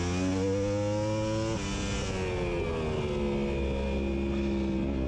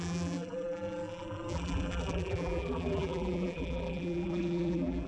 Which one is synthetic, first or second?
second